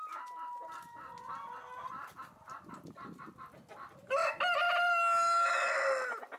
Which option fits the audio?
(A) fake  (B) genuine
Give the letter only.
B